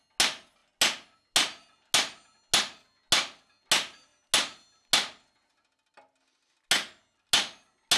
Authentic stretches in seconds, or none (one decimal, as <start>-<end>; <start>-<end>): 0.0-8.0